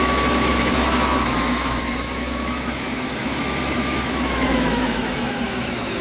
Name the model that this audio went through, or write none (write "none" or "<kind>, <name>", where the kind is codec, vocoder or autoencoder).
autoencoder, DAC-VAE